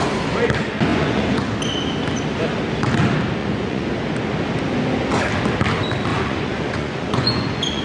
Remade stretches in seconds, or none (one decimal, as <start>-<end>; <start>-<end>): 0.9-1.5; 3.4-3.9; 6.1-7.8